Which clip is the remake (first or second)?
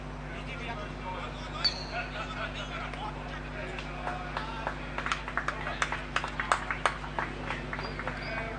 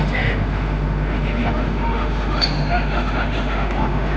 second